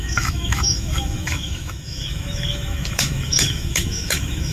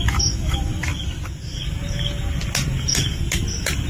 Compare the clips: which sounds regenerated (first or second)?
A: first